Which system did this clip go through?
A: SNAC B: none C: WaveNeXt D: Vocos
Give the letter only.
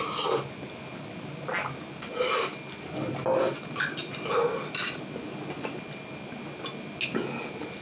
B